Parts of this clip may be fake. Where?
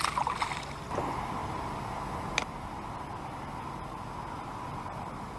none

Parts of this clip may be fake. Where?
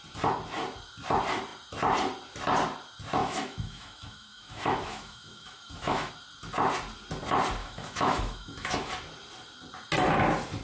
3.2-6.1 (autoencoder, DAC-VAE); 7.6-8.9